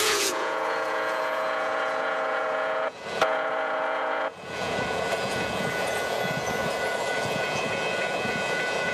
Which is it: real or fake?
fake